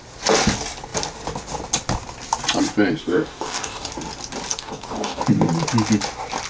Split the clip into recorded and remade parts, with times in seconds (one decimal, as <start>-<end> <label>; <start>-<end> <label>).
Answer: 0.0-3.0 recorded; 3.0-3.9 remade; 3.9-4.5 recorded; 4.5-5.2 remade; 5.2-6.5 recorded